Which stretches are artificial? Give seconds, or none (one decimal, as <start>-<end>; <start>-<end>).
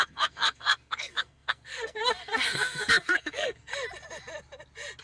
0.0-3.7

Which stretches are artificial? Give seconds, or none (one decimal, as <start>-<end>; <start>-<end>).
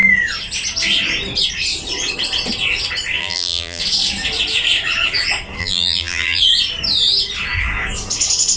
3.2-3.8; 5.6-6.4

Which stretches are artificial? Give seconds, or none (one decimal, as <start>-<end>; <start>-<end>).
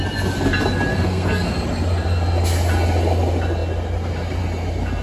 0.9-1.5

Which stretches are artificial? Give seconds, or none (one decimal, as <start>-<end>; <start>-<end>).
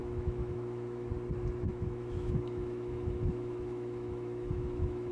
0.0-1.1; 1.7-5.1